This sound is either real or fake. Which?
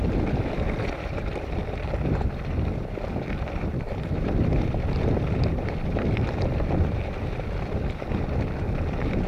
fake